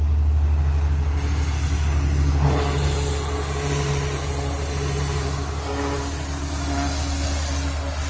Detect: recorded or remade recorded